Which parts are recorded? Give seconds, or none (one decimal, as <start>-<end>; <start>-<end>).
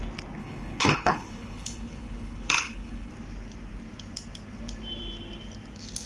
0.0-0.4; 3.1-6.1